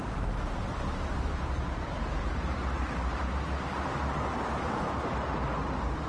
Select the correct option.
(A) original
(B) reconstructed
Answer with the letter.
B